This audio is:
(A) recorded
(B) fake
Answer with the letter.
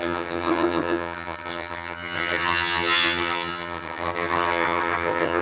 B